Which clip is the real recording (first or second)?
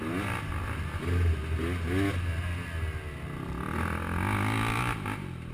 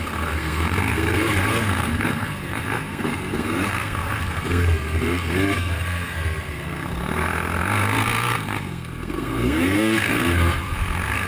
first